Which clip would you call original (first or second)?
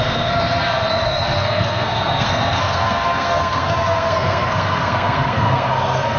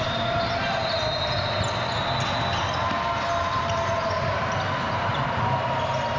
second